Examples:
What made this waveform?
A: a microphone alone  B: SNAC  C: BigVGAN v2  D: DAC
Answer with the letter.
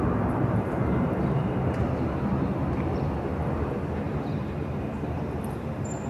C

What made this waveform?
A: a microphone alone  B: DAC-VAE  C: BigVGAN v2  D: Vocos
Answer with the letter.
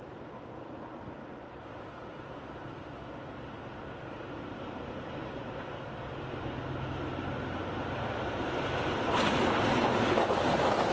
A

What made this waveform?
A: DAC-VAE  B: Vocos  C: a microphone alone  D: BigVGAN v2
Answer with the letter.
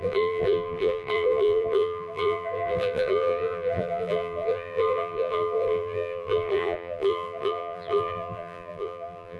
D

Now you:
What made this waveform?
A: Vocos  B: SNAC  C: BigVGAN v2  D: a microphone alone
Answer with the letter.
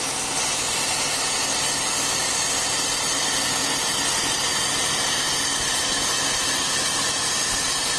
D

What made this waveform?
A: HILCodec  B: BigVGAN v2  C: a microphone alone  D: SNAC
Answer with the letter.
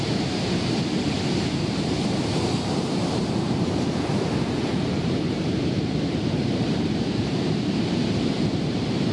B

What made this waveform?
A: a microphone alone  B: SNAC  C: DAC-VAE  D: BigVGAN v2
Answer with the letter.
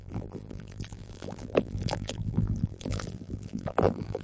D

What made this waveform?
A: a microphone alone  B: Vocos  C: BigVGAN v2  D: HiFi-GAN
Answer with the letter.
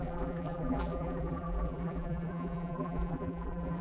C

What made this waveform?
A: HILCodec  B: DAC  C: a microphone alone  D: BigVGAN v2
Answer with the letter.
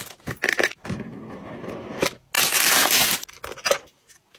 C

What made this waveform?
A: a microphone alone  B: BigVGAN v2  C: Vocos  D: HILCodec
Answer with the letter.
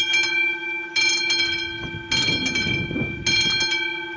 A